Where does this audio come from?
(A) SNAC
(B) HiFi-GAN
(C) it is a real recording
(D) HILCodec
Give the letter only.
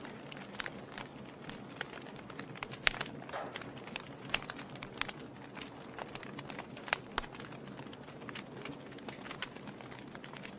C